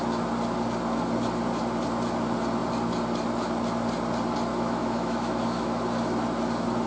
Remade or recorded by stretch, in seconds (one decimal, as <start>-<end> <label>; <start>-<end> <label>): 0.0-4.5 recorded; 4.5-5.8 remade; 5.8-6.9 recorded